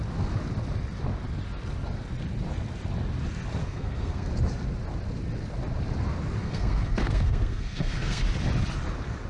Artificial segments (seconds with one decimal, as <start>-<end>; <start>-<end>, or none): 3.6-4.3; 6.4-8.2